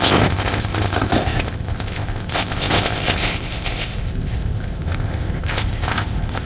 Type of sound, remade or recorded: remade